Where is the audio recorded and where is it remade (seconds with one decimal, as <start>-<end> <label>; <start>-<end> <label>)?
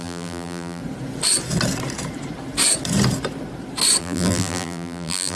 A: 0.0-0.8 remade; 0.8-4.0 recorded; 4.0-5.4 remade